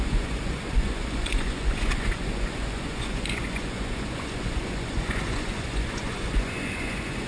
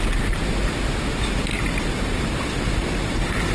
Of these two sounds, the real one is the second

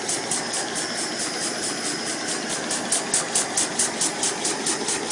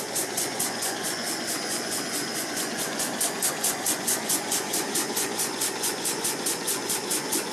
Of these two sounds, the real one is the first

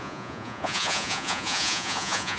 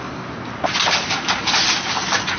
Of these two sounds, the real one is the second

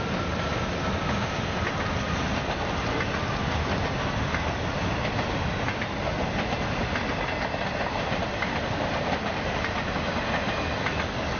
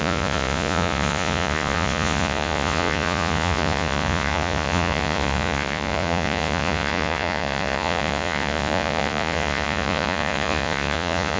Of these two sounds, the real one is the first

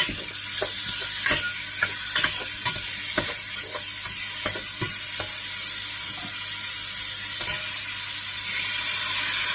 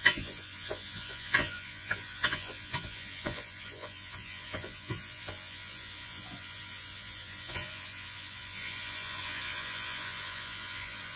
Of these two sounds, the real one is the first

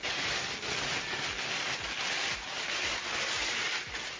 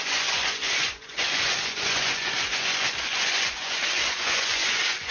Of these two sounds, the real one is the first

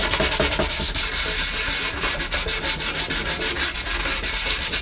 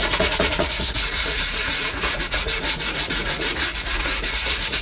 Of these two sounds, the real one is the first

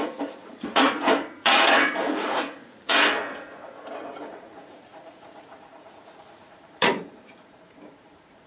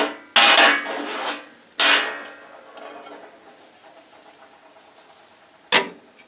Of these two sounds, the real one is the second